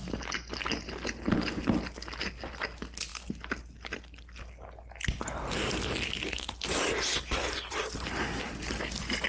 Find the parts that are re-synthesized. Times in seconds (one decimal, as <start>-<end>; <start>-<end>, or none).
none